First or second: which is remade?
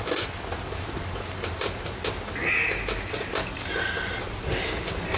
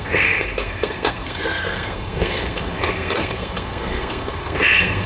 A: second